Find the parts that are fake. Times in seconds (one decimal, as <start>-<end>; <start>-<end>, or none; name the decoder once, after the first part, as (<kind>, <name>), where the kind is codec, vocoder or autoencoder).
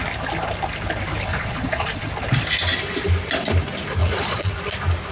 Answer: 1.3-2.1 (vocoder, Vocos); 4.0-4.5